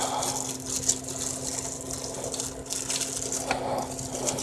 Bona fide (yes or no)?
yes